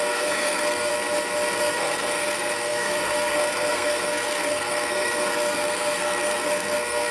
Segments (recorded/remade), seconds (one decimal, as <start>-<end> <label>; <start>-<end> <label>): 0.0-0.9 remade; 0.9-1.6 recorded; 1.6-7.1 remade